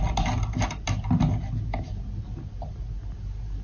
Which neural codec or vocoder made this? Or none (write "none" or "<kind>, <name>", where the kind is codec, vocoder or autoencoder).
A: none